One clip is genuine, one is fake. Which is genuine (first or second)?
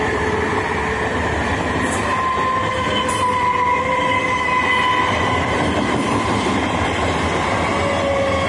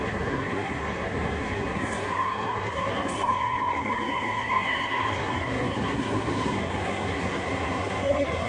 first